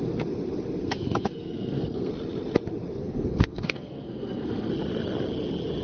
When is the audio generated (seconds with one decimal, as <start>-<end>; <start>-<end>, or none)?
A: 0.8-2.1; 3.0-4.7

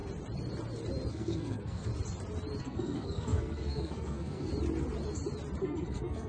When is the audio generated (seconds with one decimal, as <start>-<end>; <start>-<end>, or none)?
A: 1.1-1.9; 2.6-4.5; 5.6-6.3

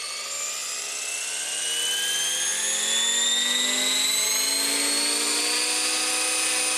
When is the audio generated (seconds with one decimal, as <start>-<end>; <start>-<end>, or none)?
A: none

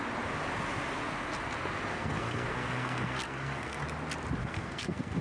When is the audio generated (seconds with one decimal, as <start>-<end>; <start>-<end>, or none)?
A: 1.9-3.8; 4.4-5.2

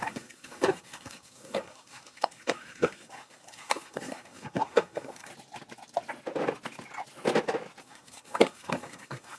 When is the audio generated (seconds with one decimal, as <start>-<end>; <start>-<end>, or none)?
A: 0.0-5.3; 7.8-9.4

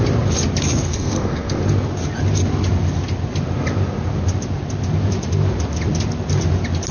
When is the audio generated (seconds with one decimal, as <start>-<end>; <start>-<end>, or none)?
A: 0.9-1.6

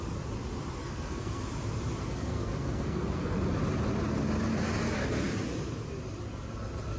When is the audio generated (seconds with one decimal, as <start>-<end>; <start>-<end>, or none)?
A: 0.8-1.4; 2.0-3.4